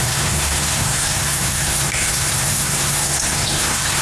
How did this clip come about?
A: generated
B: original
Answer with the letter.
A